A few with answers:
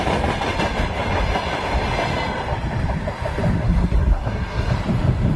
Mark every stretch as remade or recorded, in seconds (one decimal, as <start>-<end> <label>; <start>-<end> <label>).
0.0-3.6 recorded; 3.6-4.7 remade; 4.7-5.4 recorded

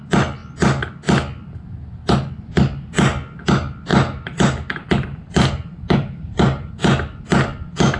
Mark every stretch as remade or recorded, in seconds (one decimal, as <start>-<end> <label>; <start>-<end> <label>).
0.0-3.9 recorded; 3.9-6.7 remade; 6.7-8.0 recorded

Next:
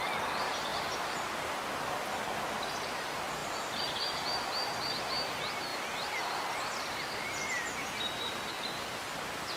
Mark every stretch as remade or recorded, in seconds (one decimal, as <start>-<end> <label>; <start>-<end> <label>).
0.0-9.6 recorded